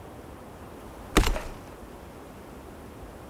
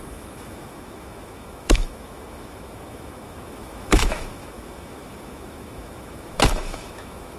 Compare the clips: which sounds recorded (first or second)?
first